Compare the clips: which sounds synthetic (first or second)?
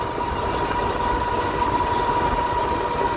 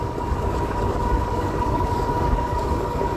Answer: second